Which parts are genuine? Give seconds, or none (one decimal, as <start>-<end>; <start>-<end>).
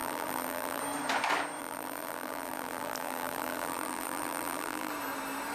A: 0.8-1.6; 4.9-5.5